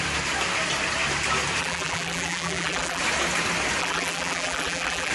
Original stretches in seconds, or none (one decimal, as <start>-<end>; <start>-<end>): 0.0-1.6; 3.0-3.8